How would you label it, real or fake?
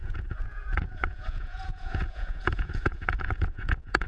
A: fake